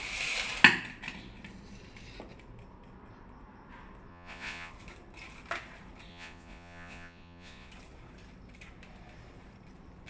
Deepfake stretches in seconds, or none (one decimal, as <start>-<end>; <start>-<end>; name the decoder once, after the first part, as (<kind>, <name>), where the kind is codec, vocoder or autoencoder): 4.1-4.7 (vocoder, Vocos); 6.1-7.7